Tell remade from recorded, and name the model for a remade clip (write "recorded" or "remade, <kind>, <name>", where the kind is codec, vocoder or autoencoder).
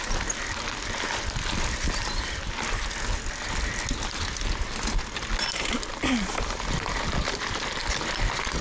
recorded